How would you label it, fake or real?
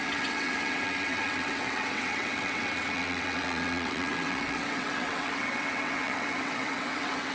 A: fake